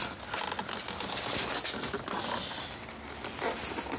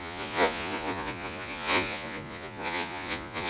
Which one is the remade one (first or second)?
second